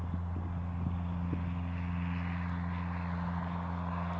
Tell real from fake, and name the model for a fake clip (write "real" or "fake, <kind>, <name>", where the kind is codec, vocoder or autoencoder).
real